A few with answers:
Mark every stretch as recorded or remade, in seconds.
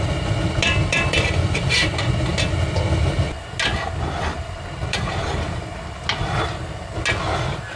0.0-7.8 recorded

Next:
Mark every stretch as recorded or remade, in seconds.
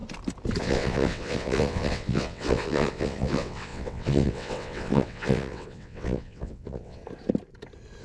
0.0-0.6 recorded; 0.6-7.0 remade; 7.0-8.0 recorded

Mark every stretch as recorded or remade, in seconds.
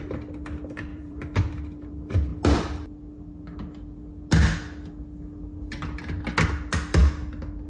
0.0-0.9 recorded; 0.9-1.9 remade; 1.9-7.7 recorded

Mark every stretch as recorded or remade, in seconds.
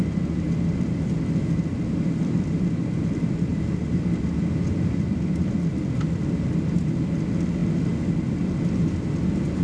0.0-3.5 recorded; 3.5-6.9 remade; 6.9-9.6 recorded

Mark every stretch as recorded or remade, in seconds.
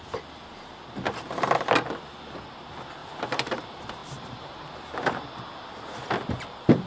0.0-3.0 recorded; 3.0-3.6 remade; 3.6-4.0 recorded; 4.0-4.6 remade; 4.6-6.9 recorded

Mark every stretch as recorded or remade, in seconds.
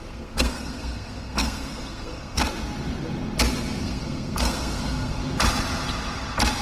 0.0-2.4 remade; 2.4-3.8 recorded; 3.8-5.2 remade; 5.2-6.6 recorded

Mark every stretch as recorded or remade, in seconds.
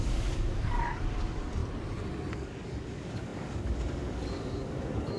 0.0-1.6 remade; 1.6-2.3 recorded; 2.3-5.2 remade